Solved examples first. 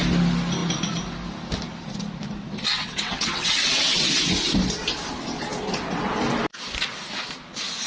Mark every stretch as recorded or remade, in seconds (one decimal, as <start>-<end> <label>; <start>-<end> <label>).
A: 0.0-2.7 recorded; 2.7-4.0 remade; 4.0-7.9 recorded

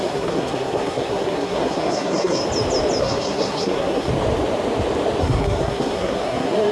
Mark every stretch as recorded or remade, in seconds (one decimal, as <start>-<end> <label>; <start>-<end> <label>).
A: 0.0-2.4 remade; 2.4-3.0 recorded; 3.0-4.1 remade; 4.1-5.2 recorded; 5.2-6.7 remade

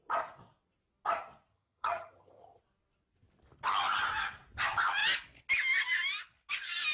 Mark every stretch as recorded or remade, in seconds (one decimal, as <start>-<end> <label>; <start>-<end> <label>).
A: 0.0-1.5 recorded; 1.5-2.6 remade; 2.6-6.9 recorded